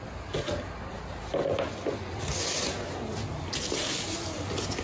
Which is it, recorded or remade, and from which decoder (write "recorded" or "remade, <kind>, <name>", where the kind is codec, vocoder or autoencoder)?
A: recorded